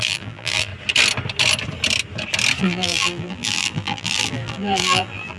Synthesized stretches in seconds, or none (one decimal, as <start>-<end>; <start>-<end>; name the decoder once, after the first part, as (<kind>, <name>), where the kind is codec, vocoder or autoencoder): 0.0-0.7 (vocoder, BigVGAN v2); 2.6-5.4